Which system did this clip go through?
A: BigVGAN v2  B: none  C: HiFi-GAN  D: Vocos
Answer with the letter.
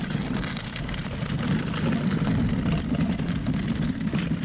B